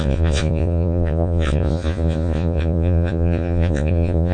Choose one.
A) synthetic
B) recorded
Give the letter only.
A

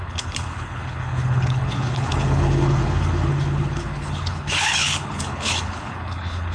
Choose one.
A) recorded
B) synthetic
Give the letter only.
B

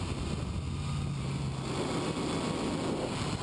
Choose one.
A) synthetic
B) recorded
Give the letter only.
B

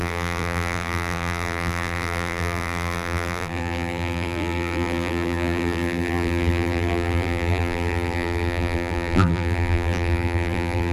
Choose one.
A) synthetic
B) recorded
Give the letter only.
A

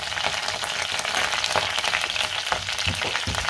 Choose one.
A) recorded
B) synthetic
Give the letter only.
A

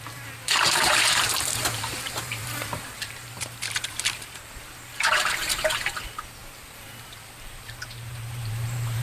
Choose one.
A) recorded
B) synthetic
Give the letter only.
B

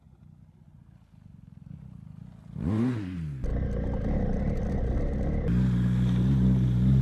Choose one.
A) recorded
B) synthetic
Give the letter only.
A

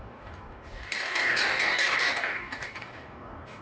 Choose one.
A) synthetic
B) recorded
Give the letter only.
A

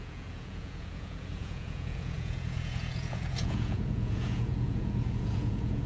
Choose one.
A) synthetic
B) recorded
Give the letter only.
A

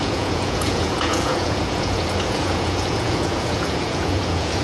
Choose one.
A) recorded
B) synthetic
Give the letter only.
B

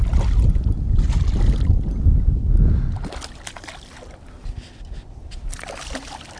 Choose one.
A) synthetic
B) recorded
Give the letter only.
B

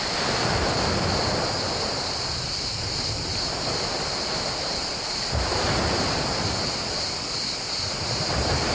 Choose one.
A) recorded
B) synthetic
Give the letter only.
A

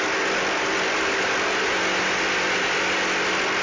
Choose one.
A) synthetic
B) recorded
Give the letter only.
B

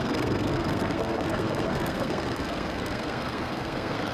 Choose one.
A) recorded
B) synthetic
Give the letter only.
B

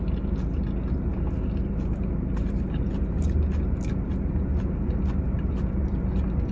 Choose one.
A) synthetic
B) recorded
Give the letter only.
B